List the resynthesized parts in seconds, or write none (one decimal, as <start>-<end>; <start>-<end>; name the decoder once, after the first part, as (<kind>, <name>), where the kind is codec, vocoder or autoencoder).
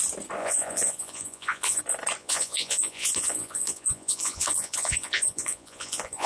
0.4-1.8 (vocoder, Vocos); 2.2-6.3